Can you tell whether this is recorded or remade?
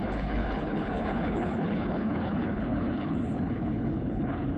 remade